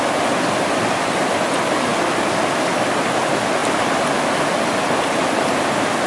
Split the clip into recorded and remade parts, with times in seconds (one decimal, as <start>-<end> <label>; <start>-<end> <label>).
0.0-6.1 recorded